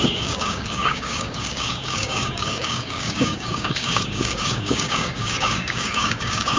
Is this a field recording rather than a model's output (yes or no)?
no